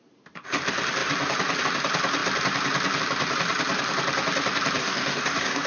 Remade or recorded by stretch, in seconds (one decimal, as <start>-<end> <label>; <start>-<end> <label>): 0.0-4.8 recorded; 4.8-5.7 remade